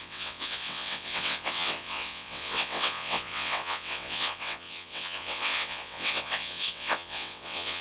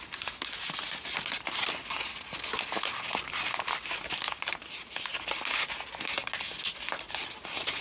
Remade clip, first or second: first